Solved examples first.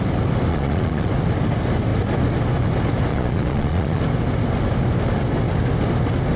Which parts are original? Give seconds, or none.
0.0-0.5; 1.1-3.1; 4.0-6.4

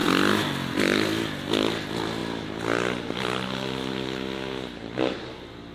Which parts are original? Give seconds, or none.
0.0-5.7

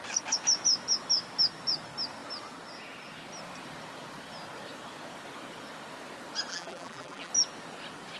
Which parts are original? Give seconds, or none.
0.0-6.5; 7.3-8.2

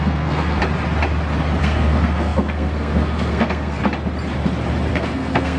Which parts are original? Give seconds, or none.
0.6-1.6; 3.8-4.9

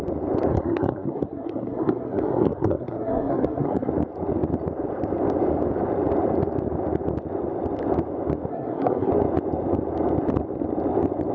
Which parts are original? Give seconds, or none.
0.0-0.5; 3.9-8.5; 9.1-11.3